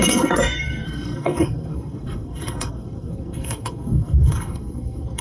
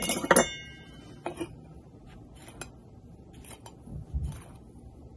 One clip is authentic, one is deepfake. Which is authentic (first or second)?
second